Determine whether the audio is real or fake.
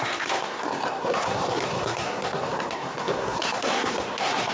fake